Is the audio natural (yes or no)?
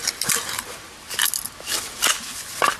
yes